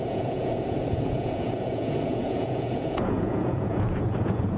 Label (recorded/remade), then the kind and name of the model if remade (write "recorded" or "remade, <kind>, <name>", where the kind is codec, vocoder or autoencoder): remade, vocoder, Vocos